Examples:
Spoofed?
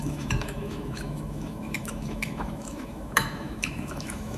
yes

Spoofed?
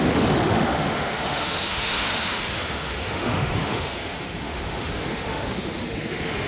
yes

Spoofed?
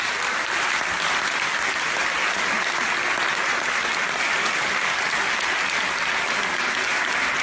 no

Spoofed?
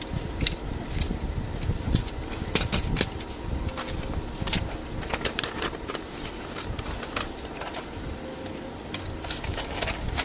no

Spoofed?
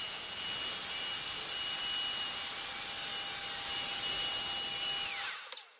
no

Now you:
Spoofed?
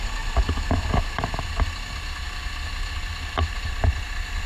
no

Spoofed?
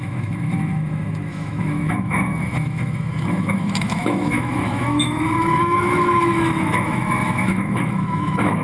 yes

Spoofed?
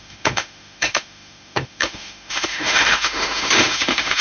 yes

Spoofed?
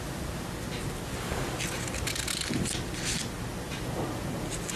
no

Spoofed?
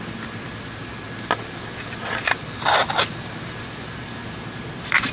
no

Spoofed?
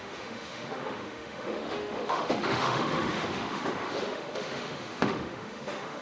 yes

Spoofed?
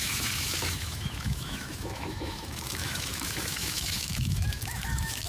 yes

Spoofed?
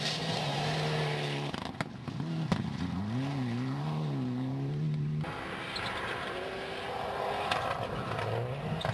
no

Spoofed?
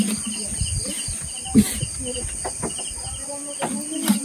no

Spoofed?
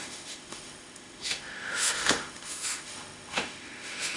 yes